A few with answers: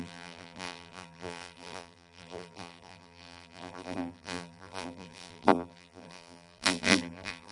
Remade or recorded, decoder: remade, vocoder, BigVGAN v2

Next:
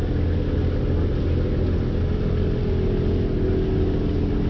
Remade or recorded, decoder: recorded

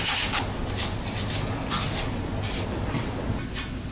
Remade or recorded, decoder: recorded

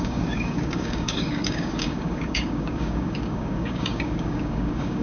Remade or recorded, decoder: remade, codec, DAC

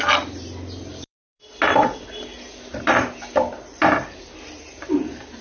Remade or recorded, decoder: remade, vocoder, BigVGAN v2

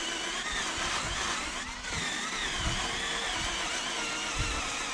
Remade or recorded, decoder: recorded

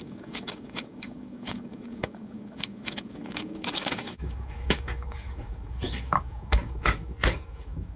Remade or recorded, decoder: remade, codec, DAC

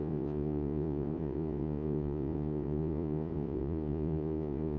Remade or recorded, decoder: remade, vocoder, Vocos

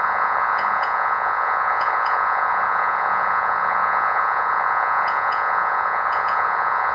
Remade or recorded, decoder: remade, vocoder, Vocos